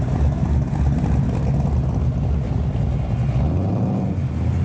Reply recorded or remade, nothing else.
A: recorded